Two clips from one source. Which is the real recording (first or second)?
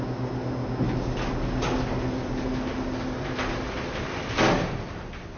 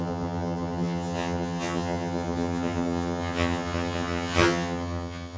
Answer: first